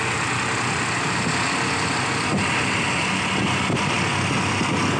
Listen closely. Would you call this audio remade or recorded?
recorded